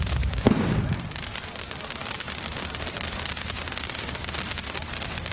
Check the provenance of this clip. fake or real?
real